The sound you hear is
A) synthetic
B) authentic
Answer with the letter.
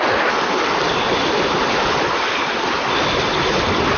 B